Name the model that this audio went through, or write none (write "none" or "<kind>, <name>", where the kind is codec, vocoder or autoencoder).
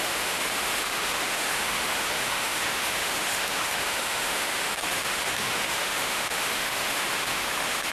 autoencoder, DAC-VAE